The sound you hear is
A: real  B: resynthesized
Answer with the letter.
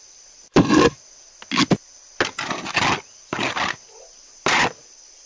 A